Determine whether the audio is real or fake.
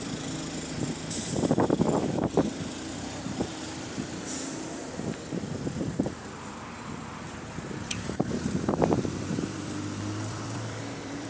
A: fake